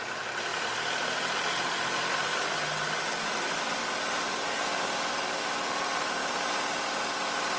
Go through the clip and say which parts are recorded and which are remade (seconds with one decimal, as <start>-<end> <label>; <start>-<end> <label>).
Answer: 0.0-0.5 recorded; 0.5-3.2 remade; 3.2-7.6 recorded